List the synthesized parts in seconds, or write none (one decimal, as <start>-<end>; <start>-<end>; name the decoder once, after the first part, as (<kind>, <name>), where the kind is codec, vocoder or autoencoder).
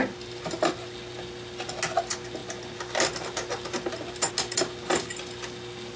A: none